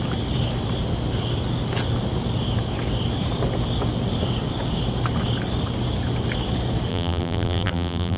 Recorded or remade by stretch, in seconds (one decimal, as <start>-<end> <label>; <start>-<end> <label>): 0.0-6.9 recorded; 6.9-8.2 remade